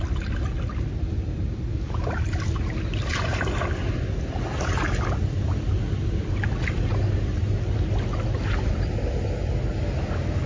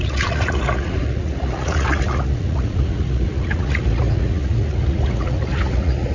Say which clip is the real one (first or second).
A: first